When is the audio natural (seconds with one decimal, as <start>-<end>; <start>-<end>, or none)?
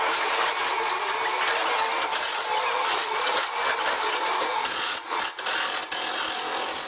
0.0-2.8; 3.3-4.6; 5.2-6.9